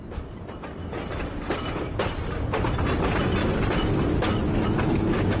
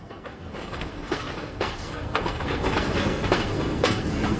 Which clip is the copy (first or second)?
second